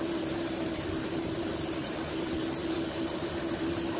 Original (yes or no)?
yes